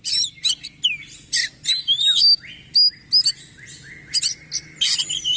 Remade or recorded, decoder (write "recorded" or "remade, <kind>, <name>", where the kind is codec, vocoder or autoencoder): recorded